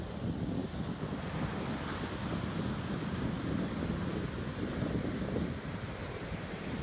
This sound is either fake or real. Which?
real